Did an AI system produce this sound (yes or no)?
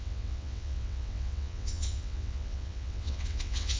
yes